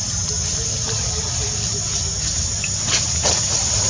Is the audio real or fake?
real